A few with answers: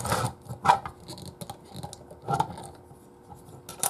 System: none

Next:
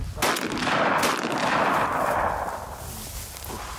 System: none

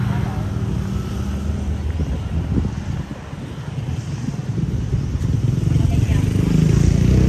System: none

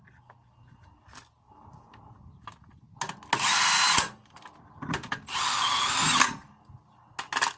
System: none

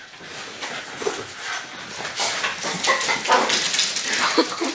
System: none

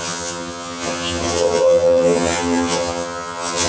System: vocoder, HiFi-GAN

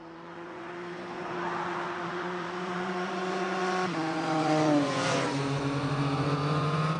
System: vocoder, Vocos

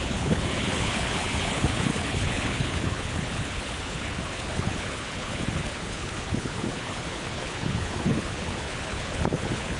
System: codec, HILCodec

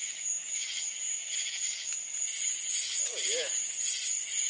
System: vocoder, Vocos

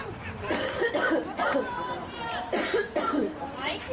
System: vocoder, BigVGAN v2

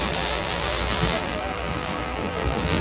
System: vocoder, BigVGAN v2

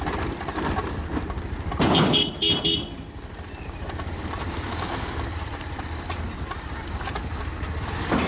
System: none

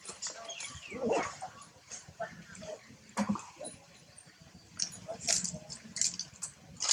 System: none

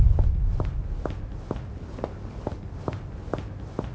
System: none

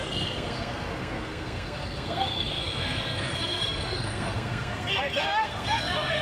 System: codec, SNAC